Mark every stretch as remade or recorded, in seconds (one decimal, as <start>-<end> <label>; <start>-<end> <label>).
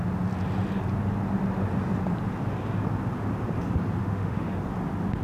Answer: 0.0-4.0 recorded; 4.0-4.6 remade; 4.6-5.2 recorded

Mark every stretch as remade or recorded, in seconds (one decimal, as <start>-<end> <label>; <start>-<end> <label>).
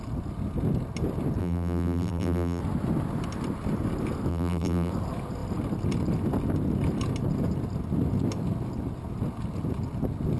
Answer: 0.0-1.4 recorded; 1.4-2.6 remade; 2.6-4.3 recorded; 4.3-4.9 remade; 4.9-10.4 recorded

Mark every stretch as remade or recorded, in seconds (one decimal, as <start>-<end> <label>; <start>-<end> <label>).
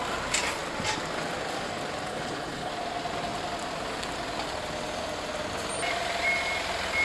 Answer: 0.0-2.1 recorded; 2.1-2.7 remade; 2.7-7.0 recorded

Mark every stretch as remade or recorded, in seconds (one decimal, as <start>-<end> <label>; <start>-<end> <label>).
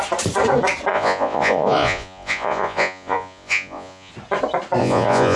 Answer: 0.0-0.9 recorded; 0.9-4.1 remade; 4.1-4.8 recorded; 4.8-5.4 remade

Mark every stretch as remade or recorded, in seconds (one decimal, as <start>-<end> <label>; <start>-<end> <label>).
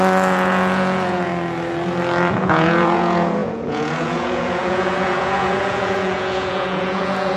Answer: 0.0-1.3 remade; 1.3-2.3 recorded; 2.3-7.4 remade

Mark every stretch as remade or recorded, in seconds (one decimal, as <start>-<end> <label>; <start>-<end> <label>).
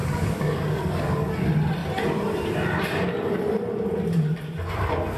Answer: 0.0-1.3 remade; 1.3-5.2 recorded